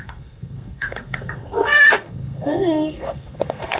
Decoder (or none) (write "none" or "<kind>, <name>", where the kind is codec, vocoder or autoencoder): codec, SNAC